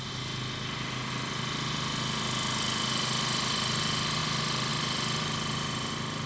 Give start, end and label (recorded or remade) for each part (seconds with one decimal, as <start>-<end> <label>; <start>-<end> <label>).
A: 0.0-6.3 recorded